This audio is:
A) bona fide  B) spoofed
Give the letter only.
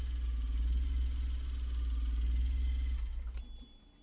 A